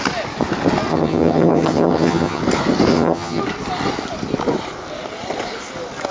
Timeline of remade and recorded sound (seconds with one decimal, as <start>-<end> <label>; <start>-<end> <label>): 0.0-0.9 recorded; 0.9-2.4 remade; 2.4-2.9 recorded; 2.9-3.4 remade; 3.4-6.1 recorded